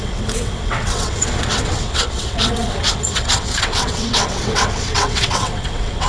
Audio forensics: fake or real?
fake